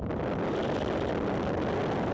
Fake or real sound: real